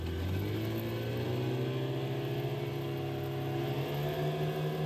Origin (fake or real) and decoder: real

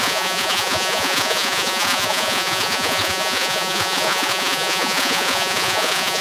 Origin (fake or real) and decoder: fake, vocoder, Vocos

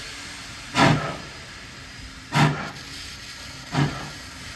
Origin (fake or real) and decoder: real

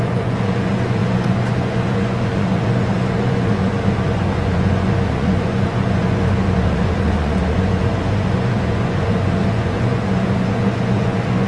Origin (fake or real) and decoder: fake, vocoder, Vocos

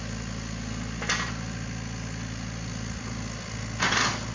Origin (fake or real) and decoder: real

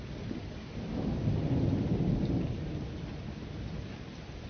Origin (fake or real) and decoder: real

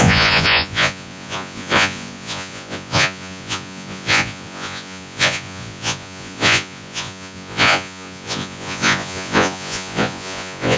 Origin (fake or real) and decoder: fake, vocoder, Vocos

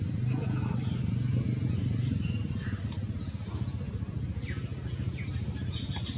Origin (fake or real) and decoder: real